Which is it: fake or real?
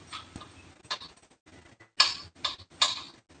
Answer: real